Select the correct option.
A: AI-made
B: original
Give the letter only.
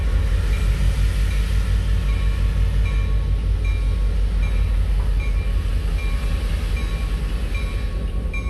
B